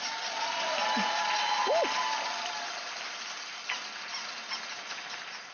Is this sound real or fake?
real